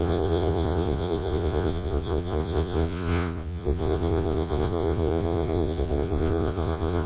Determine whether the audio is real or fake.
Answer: fake